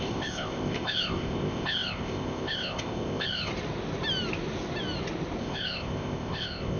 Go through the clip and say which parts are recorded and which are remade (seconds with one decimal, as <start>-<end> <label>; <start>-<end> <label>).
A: 0.0-3.5 remade; 3.5-5.4 recorded; 5.4-6.8 remade

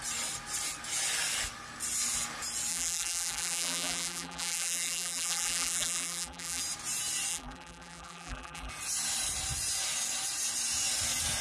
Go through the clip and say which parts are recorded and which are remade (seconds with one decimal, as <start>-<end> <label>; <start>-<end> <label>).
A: 0.0-2.7 recorded; 2.7-6.6 remade; 6.6-7.3 recorded; 7.3-8.7 remade; 8.7-11.4 recorded

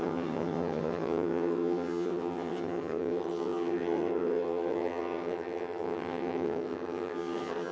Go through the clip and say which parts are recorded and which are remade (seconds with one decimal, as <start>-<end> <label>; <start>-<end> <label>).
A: 0.0-7.7 remade

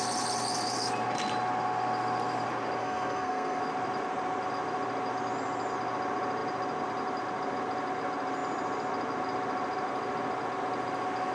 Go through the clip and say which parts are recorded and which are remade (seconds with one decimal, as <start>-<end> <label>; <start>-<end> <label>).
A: 0.0-2.8 recorded; 2.8-3.6 remade; 3.6-11.3 recorded

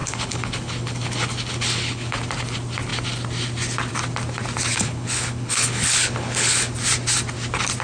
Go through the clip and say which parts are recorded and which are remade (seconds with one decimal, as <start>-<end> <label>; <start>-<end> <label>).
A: 0.0-2.2 remade; 2.2-4.7 recorded; 4.7-6.7 remade; 6.7-7.8 recorded

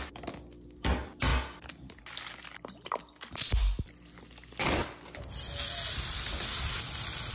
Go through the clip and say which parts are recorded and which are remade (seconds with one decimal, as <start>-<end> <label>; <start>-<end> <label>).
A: 0.0-7.3 recorded

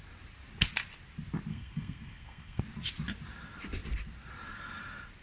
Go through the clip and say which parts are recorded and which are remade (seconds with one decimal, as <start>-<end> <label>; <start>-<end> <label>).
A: 0.0-1.5 recorded; 1.5-2.6 remade; 2.6-5.2 recorded

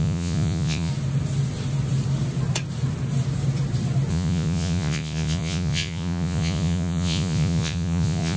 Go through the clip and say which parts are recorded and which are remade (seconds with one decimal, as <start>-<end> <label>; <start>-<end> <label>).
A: 0.0-0.9 remade; 0.9-4.1 recorded; 4.1-8.4 remade